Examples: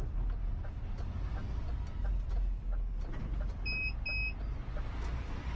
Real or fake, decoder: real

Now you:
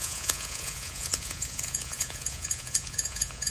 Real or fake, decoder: fake, vocoder, Vocos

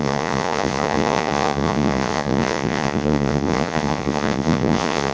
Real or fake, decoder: fake, vocoder, Vocos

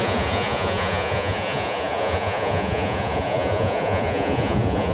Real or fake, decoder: fake, vocoder, Vocos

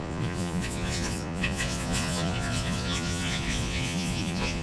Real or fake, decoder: fake, vocoder, Vocos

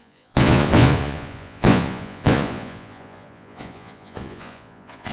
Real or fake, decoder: fake, vocoder, Vocos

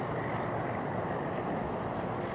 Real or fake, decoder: real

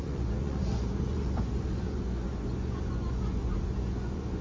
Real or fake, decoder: fake, vocoder, Vocos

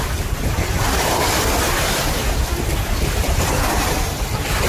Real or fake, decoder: real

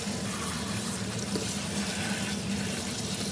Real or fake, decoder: real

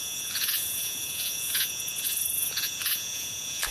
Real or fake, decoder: fake, vocoder, Vocos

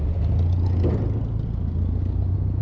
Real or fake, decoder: real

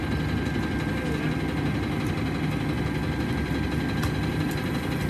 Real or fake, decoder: real